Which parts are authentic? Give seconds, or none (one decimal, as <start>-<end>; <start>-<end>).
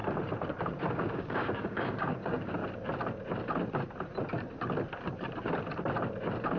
0.0-0.6; 2.6-6.6